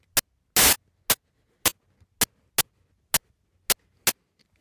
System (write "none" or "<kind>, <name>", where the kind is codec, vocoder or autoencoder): none